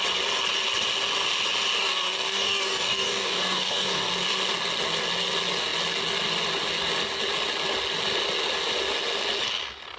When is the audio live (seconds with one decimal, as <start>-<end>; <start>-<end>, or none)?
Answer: 0.0-1.8; 4.1-10.0